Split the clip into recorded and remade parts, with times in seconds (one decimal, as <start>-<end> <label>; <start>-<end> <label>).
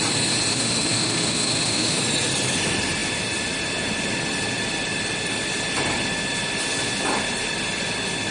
0.0-0.5 recorded; 0.5-2.0 remade; 2.0-8.3 recorded